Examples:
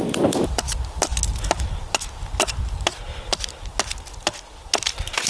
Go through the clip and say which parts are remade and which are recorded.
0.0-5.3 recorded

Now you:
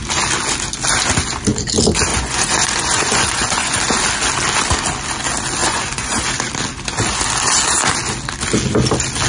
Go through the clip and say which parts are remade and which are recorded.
0.0-2.1 recorded; 2.1-3.8 remade; 3.8-5.6 recorded; 5.6-6.2 remade; 6.2-9.3 recorded

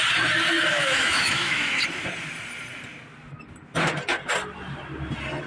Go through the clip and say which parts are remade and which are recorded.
0.0-0.7 recorded; 0.7-1.8 remade; 1.8-5.5 recorded

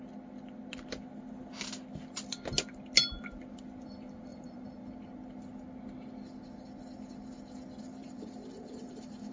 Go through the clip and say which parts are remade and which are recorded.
0.0-4.3 recorded; 4.3-4.9 remade; 4.9-8.0 recorded; 8.0-9.3 remade